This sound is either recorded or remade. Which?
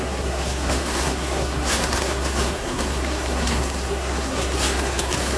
remade